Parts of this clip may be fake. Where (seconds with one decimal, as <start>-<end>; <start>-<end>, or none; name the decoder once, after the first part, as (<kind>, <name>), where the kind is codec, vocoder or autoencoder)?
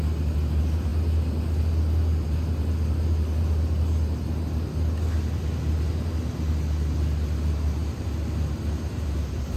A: none